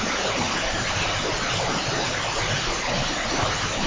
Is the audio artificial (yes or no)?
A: no